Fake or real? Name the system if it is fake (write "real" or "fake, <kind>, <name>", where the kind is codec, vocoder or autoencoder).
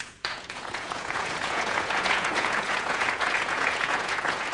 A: fake, vocoder, Vocos